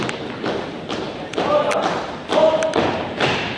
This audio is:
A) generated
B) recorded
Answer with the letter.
B